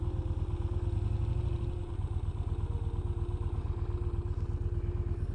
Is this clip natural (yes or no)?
yes